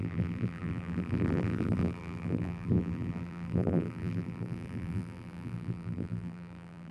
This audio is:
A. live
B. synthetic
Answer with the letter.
B